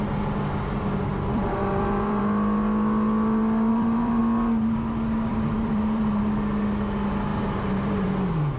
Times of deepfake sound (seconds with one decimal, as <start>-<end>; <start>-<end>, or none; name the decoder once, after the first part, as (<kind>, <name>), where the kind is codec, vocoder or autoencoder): 1.1-2.2 (vocoder, BigVGAN v2); 3.7-4.2; 5.3-6.2; 7.3-8.1